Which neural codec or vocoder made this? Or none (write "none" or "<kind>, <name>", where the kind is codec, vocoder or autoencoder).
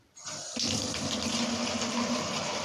vocoder, BigVGAN v2